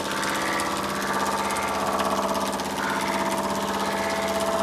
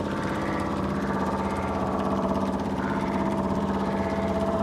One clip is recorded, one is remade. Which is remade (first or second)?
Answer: second